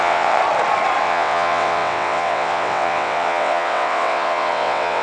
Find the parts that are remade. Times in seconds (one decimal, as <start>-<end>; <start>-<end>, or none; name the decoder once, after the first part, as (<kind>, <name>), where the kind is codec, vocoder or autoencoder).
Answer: 0.0-0.4 (vocoder, WaveNeXt); 1.0-5.0